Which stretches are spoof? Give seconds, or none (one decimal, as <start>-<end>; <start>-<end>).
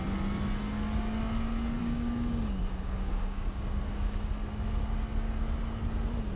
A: 1.8-4.3